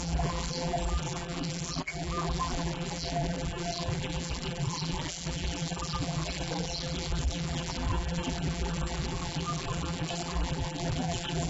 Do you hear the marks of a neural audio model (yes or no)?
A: yes